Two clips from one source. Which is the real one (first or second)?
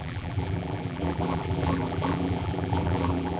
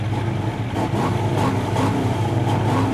second